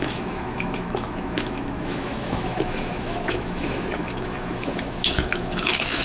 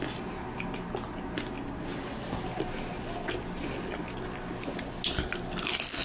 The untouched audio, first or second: second